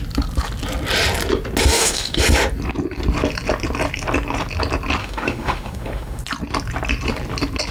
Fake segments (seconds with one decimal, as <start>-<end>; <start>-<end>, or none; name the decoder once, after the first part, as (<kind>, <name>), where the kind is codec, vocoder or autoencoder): 1.7-2.2 (autoencoder, DAC-VAE); 5.0-6.2